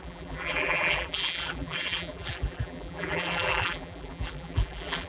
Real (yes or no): no